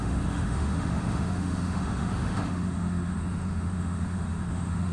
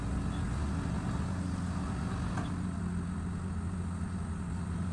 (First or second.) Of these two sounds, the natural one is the second